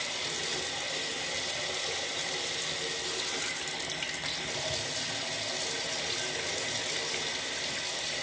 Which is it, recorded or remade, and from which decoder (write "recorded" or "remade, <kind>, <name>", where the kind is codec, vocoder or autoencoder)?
recorded